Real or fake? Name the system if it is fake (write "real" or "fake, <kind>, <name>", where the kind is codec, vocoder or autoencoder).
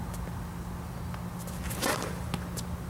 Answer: real